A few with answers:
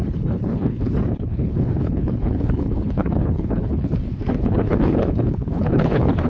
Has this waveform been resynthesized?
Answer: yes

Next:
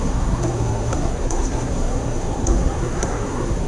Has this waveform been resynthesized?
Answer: yes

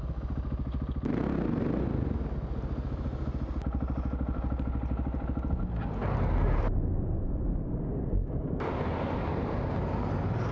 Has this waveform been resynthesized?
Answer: no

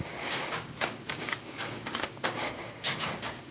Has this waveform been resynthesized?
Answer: yes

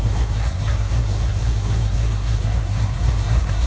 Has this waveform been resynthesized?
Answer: yes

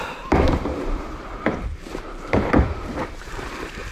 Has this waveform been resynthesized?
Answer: yes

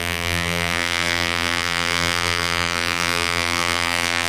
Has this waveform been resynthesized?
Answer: yes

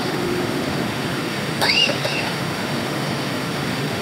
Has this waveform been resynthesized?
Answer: yes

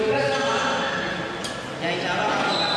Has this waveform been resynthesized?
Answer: no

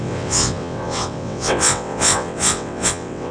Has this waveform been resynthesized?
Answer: yes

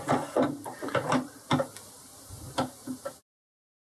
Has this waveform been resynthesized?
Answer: no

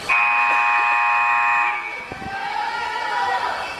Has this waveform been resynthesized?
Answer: yes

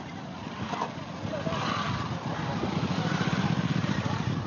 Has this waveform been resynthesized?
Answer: no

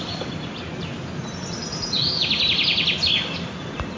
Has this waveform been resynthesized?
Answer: no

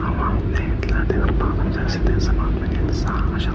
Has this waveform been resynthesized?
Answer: no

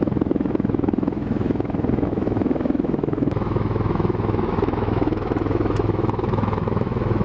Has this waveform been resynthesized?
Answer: yes